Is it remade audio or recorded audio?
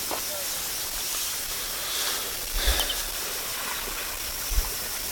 recorded